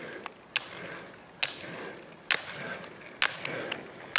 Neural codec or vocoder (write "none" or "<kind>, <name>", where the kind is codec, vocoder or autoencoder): none